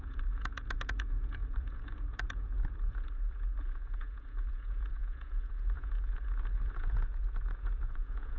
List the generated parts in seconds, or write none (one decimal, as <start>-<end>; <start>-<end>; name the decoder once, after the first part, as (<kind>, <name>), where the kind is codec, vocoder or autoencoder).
0.0-8.4 (vocoder, Vocos)